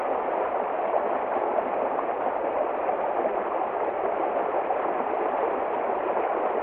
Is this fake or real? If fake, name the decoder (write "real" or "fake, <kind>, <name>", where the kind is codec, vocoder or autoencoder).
real